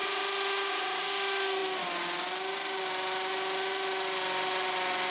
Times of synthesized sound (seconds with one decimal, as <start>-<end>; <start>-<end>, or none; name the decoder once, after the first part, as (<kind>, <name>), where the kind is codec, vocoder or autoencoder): none